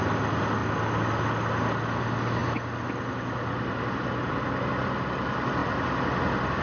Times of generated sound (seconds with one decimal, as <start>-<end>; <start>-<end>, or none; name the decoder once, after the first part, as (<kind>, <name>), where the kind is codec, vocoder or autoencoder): none